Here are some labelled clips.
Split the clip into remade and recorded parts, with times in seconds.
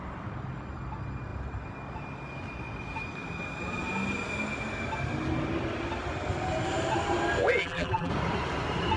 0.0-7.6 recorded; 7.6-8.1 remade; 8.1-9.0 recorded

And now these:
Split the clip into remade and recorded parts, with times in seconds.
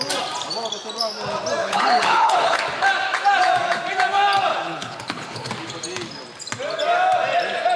0.0-1.6 recorded; 1.6-2.6 remade; 2.6-4.5 recorded; 4.5-5.5 remade; 5.5-7.8 recorded